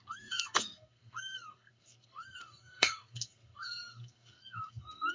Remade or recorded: remade